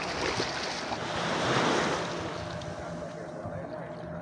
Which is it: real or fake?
real